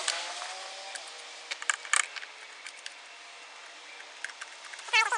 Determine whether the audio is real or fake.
real